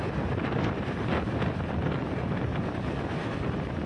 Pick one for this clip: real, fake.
real